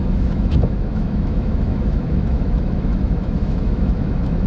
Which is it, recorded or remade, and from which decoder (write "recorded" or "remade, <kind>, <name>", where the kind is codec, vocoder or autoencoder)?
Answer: remade, autoencoder, DAC-VAE